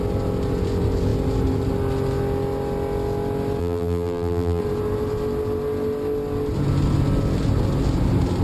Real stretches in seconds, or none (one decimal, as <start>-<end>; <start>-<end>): 0.0-3.6; 4.6-8.4